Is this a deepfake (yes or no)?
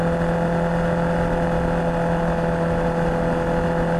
no